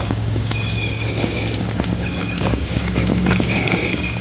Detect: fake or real fake